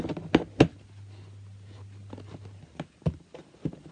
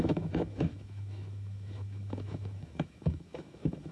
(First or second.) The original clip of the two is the first